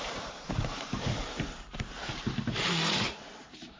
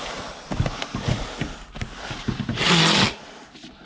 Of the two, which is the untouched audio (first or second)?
second